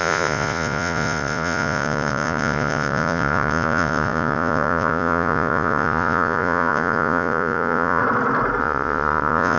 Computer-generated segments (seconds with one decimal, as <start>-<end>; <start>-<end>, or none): 0.0-8.0; 8.6-9.6